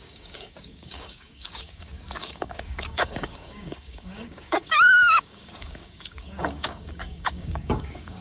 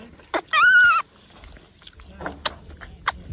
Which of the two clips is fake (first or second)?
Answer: first